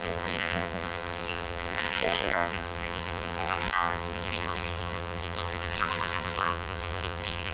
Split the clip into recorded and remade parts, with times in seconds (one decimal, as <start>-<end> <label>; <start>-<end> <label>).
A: 0.0-7.5 remade

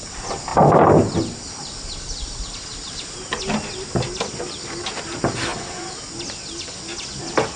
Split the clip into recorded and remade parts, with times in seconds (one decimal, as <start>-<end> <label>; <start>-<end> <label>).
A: 0.0-7.6 recorded

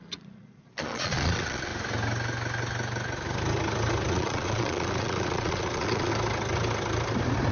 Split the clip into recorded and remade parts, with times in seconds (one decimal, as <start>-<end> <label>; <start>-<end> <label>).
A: 0.0-1.7 remade; 1.7-4.1 recorded; 4.1-6.1 remade; 6.1-7.5 recorded

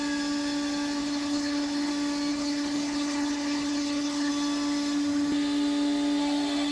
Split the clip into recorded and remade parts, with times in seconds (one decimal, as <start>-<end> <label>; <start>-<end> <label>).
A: 0.0-1.0 recorded; 1.0-1.9 remade; 1.9-2.3 recorded; 2.3-4.3 remade; 4.3-6.7 recorded

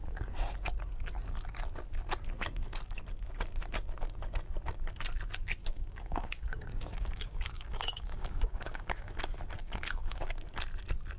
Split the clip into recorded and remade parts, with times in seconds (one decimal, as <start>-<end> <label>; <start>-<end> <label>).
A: 0.0-5.6 recorded; 5.6-9.1 remade; 9.1-9.6 recorded; 9.6-10.3 remade; 10.3-11.2 recorded

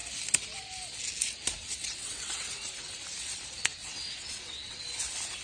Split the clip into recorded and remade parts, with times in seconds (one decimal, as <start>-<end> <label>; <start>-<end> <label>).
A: 0.0-1.6 recorded; 1.6-2.5 remade; 2.5-3.8 recorded; 3.8-4.8 remade; 4.8-5.4 recorded

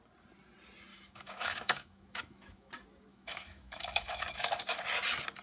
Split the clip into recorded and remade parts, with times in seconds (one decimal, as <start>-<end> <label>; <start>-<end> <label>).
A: 0.0-0.9 recorded; 0.9-2.7 remade; 2.7-3.1 recorded; 3.1-4.6 remade; 4.6-5.4 recorded

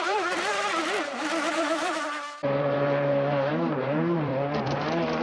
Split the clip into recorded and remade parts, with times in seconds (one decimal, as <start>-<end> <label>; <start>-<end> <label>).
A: 0.0-0.8 remade; 0.8-1.5 recorded; 1.5-4.3 remade; 4.3-5.2 recorded